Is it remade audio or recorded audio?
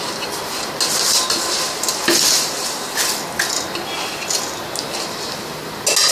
recorded